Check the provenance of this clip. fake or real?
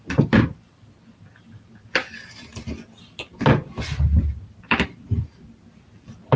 real